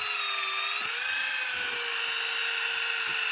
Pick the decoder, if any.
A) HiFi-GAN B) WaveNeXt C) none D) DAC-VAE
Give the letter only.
C